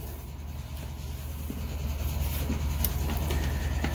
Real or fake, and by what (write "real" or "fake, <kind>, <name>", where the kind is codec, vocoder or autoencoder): real